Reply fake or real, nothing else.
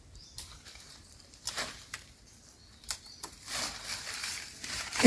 fake